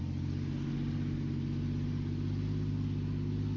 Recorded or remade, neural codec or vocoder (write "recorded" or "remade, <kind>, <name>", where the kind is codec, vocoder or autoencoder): recorded